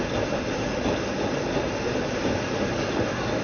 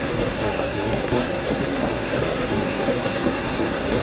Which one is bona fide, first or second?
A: first